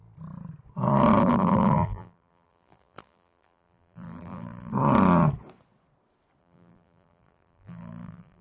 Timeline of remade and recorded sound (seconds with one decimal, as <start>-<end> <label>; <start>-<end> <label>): 0.0-1.2 recorded; 1.2-4.7 remade; 4.7-6.4 recorded; 6.4-8.4 remade